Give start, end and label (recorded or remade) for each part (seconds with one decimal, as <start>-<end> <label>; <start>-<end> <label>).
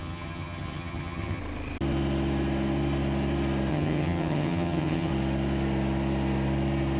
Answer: 0.0-1.4 remade; 1.4-3.7 recorded; 3.7-5.1 remade; 5.1-7.0 recorded